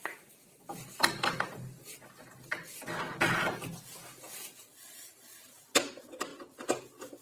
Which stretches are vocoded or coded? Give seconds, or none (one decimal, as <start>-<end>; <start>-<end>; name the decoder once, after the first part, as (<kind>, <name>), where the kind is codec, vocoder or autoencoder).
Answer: none